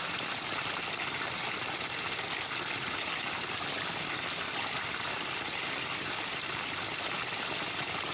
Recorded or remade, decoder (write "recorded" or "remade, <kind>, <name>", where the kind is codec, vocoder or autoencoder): recorded